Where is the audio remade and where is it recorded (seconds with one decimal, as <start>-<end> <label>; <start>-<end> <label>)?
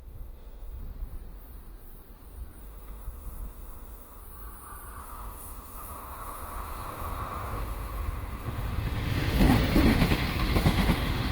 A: 0.0-0.8 remade; 0.8-2.6 recorded; 2.6-4.2 remade; 4.2-5.0 recorded; 5.0-9.5 remade; 9.5-9.9 recorded; 9.9-11.3 remade